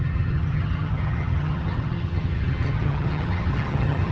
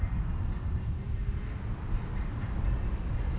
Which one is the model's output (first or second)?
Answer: first